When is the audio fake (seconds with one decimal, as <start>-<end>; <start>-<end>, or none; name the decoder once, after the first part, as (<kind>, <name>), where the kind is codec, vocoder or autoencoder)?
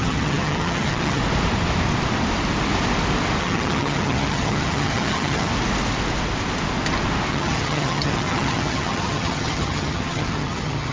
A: 0.0-1.2 (vocoder, HiFi-GAN); 3.4-5.5; 7.3-10.9